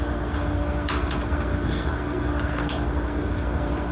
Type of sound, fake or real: fake